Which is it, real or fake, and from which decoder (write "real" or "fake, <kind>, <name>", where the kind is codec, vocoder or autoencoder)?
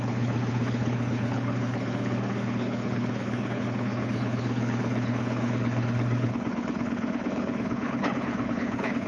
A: fake, codec, HILCodec